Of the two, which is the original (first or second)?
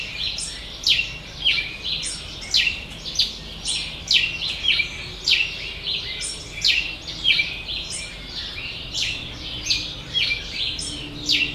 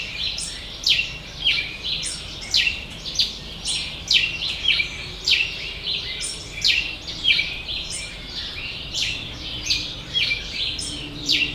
first